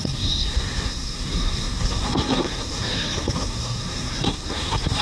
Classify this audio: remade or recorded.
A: remade